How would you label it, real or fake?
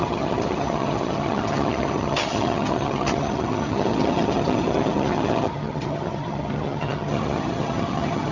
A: fake